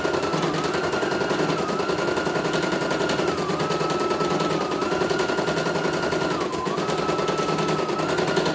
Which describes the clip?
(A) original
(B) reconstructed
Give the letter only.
A